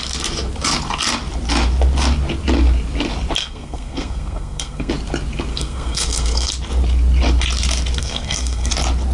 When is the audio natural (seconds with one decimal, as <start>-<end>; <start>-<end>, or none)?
0.0-3.4; 4.9-5.5; 6.5-8.0; 8.7-9.1